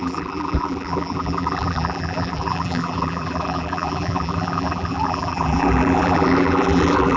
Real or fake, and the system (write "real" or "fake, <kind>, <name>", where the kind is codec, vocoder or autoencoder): fake, vocoder, BigVGAN v2